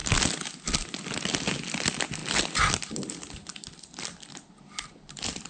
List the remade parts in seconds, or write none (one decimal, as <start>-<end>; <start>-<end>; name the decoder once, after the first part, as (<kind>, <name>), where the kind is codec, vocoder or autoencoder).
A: 1.7-5.5 (vocoder, BigVGAN v2)